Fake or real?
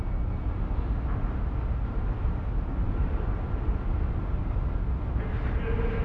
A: real